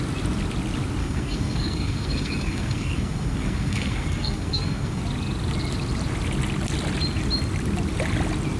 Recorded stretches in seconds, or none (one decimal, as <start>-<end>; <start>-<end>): 0.0-1.0; 5.0-8.6